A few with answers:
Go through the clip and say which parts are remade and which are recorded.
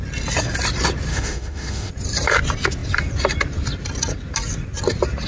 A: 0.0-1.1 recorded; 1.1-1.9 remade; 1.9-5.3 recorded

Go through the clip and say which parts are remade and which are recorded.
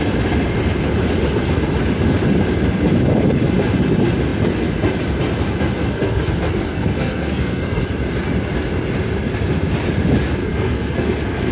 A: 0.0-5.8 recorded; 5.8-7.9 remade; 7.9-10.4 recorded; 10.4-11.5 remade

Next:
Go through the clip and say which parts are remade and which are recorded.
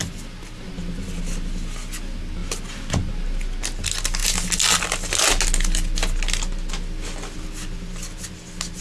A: 0.0-8.8 recorded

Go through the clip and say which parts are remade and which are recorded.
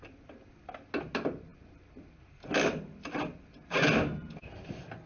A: 0.0-5.1 recorded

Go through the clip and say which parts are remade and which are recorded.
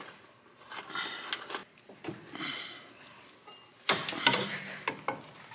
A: 0.0-5.5 recorded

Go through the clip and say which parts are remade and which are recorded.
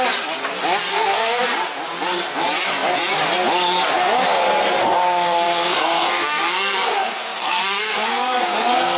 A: 0.0-0.9 recorded; 0.9-1.4 remade; 1.4-4.8 recorded; 4.8-9.0 remade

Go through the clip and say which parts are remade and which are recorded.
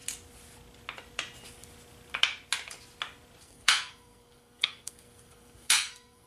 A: 0.0-3.4 recorded; 3.4-6.3 remade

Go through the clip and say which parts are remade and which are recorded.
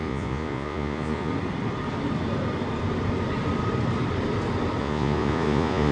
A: 0.0-1.3 remade; 1.3-4.8 recorded; 4.8-5.9 remade